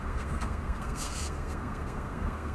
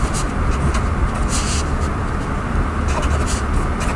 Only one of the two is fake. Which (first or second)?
first